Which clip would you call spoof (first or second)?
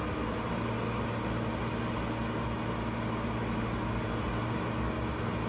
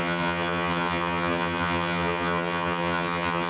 second